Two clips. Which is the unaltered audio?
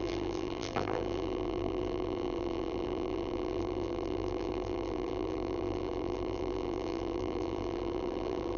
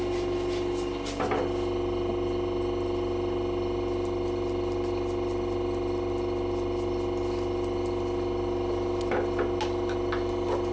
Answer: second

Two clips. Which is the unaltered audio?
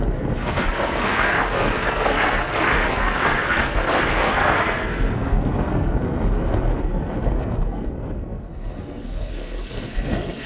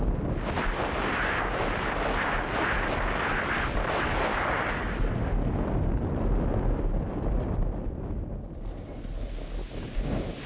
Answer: second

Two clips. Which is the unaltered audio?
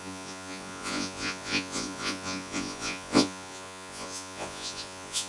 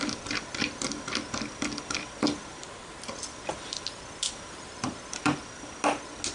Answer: second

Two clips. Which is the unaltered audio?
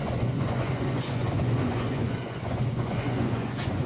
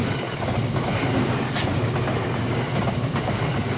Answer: second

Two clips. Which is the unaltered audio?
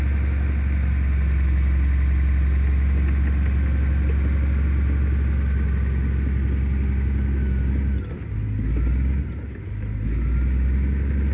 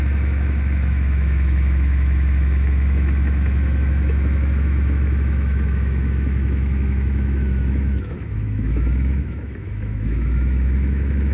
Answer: first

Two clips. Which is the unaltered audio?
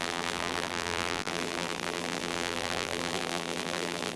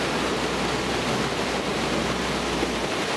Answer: second